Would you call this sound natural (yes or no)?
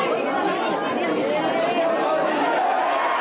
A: yes